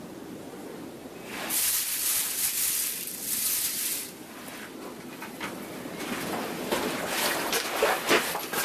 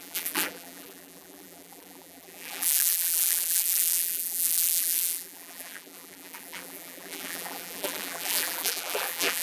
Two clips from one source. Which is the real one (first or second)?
first